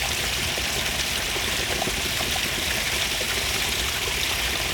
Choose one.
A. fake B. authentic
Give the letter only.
B